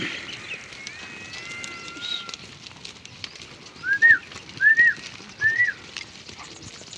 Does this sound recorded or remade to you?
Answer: recorded